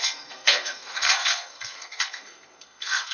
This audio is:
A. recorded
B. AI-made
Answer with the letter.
B